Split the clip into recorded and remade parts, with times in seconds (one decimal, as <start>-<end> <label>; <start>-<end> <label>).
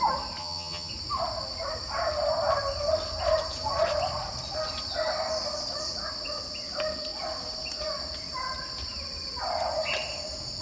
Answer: 0.0-0.4 recorded; 0.4-0.9 remade; 0.9-10.6 recorded